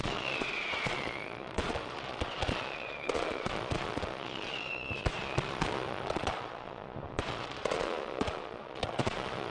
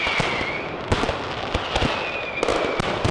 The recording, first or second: second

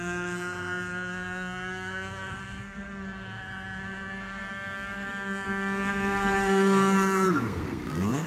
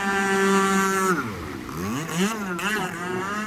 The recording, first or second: second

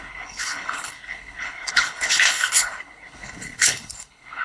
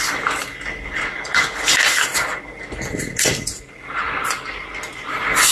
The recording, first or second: second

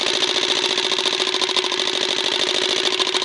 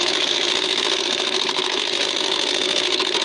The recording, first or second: first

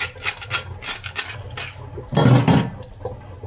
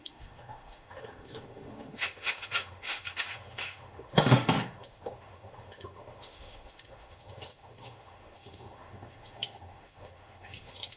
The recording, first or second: first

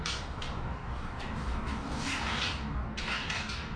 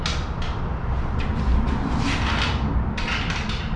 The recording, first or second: second